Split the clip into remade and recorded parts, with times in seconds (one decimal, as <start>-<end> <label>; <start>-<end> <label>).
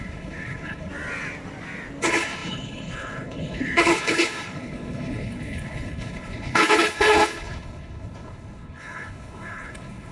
0.0-0.9 remade; 0.9-2.0 recorded; 2.0-10.1 remade